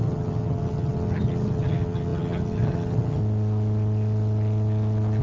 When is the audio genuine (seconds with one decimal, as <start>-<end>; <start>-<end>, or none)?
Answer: 3.2-5.2